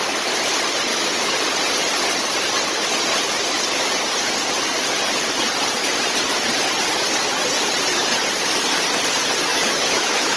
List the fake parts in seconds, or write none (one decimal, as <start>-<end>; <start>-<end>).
0.9-1.4; 9.5-10.4